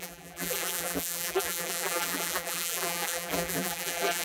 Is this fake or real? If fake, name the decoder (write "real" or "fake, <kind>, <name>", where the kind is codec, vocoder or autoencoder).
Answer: fake, vocoder, BigVGAN v2